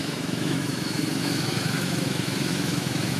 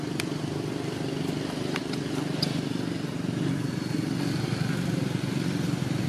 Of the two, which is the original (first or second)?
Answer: second